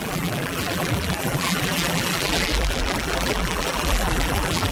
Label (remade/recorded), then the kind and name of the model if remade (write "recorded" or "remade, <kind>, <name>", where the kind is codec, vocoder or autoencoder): remade, vocoder, BigVGAN v2